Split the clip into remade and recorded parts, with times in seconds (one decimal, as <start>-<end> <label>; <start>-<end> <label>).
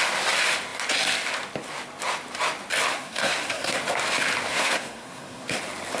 0.0-2.9 recorded; 2.9-3.8 remade; 3.8-4.5 recorded; 4.5-5.6 remade; 5.6-6.0 recorded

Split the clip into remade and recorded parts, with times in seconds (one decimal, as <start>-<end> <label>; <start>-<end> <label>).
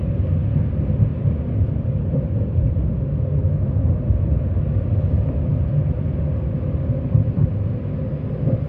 0.0-1.1 recorded; 1.1-3.1 remade; 3.1-3.8 recorded; 3.8-4.6 remade; 4.6-8.7 recorded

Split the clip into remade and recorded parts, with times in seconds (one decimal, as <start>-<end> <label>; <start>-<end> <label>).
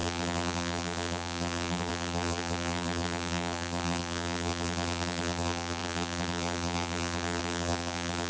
0.0-8.3 remade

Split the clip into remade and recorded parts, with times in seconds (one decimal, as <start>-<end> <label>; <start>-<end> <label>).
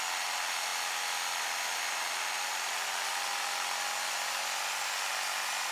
0.0-5.7 recorded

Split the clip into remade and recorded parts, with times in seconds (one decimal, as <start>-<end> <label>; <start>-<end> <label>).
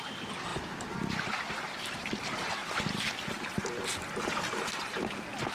0.0-5.5 recorded